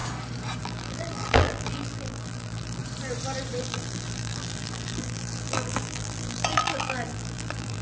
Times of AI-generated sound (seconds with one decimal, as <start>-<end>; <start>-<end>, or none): 0.6-2.8; 3.6-7.8